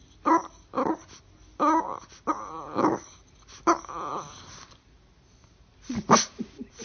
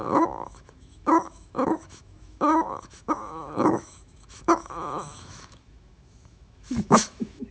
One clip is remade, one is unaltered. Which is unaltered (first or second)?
first